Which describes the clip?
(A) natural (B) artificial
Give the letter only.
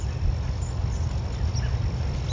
A